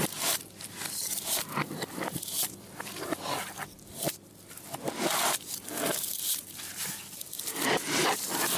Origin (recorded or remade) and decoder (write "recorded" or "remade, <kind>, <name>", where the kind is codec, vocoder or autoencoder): remade, vocoder, BigVGAN v2